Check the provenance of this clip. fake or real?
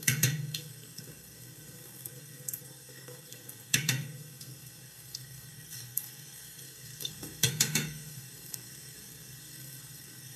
fake